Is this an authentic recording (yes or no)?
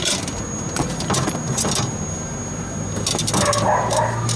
yes